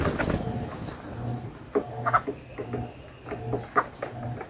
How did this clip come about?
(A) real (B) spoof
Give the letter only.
A